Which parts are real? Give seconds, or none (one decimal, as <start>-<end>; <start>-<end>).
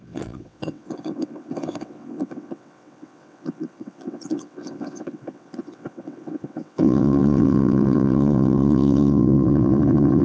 none